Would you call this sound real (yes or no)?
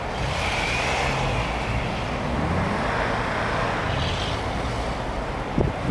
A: yes